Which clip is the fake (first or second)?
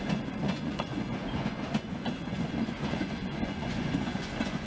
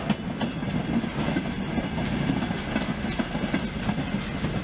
first